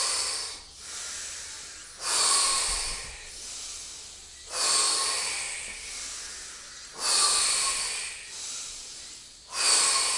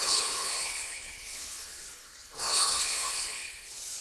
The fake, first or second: second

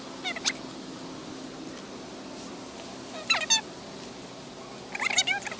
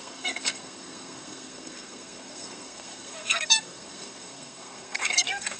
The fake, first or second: second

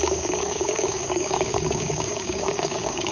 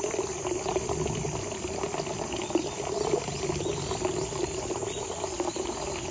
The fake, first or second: first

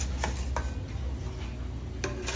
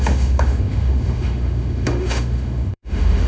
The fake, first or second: second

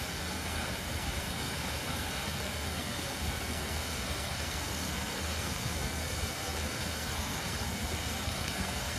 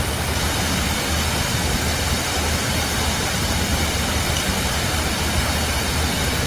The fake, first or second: first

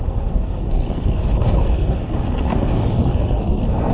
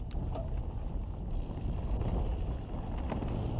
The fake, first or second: first